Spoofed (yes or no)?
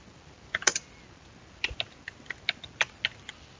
no